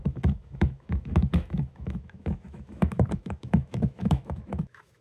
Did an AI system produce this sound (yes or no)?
yes